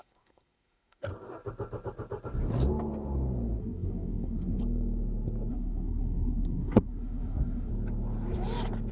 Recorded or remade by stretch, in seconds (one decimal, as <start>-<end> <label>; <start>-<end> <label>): 0.0-1.1 remade; 1.1-3.6 recorded; 3.6-4.6 remade; 4.6-5.5 recorded; 5.5-7.7 remade; 7.7-8.9 recorded